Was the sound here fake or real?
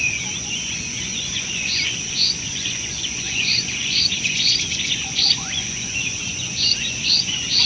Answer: fake